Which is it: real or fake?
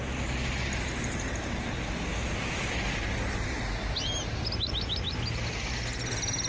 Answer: real